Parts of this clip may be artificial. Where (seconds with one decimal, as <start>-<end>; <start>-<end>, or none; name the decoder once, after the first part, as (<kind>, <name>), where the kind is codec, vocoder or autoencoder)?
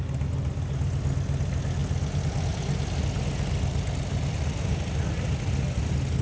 none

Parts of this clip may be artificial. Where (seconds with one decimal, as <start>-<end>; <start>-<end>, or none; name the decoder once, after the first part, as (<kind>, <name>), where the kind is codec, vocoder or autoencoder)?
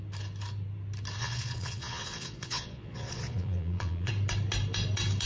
1.2-4.1 (vocoder, Vocos)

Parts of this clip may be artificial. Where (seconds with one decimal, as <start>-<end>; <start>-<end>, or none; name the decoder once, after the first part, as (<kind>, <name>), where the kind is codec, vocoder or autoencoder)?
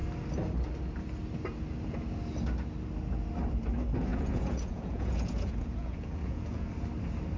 4.1-6.7 (vocoder, Vocos)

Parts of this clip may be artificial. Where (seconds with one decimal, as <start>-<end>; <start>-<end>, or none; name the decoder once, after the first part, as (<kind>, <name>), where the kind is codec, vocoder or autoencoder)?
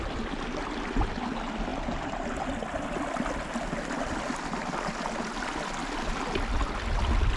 none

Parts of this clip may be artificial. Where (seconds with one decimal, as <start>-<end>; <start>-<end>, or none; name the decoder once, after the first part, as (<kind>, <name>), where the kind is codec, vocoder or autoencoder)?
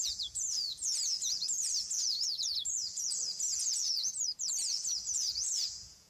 0.0-6.1 (vocoder, Vocos)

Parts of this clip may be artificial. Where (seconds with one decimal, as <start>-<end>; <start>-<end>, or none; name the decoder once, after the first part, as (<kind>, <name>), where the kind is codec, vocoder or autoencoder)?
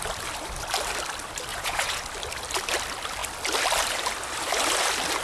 1.5-2.0 (vocoder, Vocos)